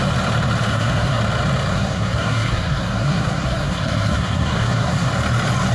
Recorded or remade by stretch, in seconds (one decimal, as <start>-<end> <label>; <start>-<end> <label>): 0.0-0.7 recorded; 0.7-1.2 remade; 1.2-1.7 recorded; 1.7-5.1 remade; 5.1-5.7 recorded